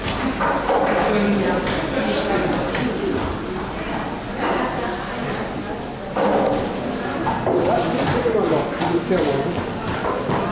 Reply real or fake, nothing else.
real